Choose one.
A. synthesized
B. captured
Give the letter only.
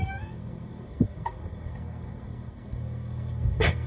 A